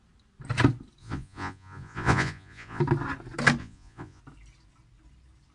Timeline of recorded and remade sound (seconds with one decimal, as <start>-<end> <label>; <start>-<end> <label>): 0.0-1.0 recorded; 1.0-2.8 remade; 2.8-3.6 recorded; 3.6-4.2 remade; 4.2-5.5 recorded